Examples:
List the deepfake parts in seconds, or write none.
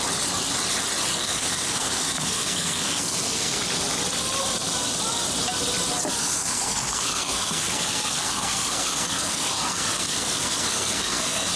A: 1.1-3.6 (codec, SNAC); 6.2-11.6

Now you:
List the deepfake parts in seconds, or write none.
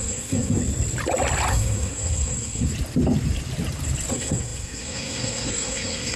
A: 0.0-0.6 (codec, SNAC); 1.5-2.7; 4.1-6.2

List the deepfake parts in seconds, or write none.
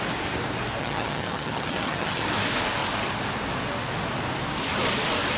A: 0.8-2.2 (vocoder, HiFi-GAN)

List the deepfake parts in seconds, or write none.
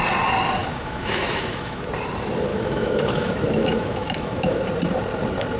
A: 0.6-1.9 (autoencoder, DAC-VAE); 2.5-4.6